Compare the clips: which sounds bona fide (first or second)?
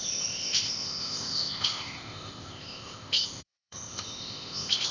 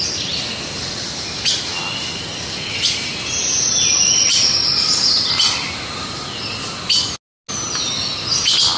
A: second